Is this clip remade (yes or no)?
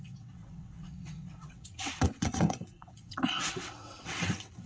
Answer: yes